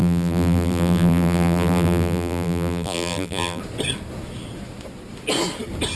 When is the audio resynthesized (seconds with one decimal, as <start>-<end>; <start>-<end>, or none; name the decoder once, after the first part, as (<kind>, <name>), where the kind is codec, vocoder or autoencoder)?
0.0-3.6 (vocoder, BigVGAN v2)

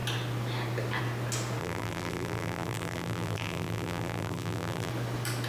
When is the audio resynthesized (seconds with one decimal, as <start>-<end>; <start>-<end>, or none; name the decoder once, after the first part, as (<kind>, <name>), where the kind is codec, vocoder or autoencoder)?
1.6-4.9 (vocoder, BigVGAN v2)

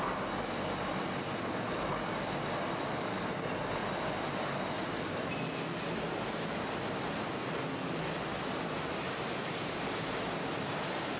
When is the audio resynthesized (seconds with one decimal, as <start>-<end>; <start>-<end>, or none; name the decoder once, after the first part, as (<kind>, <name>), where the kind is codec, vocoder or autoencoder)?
none

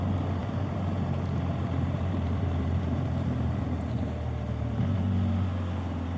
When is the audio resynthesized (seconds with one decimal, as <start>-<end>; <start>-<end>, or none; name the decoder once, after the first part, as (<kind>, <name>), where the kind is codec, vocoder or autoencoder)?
0.4-3.8 (vocoder, BigVGAN v2)

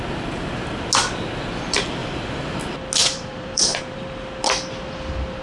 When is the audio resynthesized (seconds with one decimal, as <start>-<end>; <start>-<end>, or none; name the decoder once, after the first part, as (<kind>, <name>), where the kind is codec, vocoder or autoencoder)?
2.0-2.6 (vocoder, BigVGAN v2); 3.0-4.1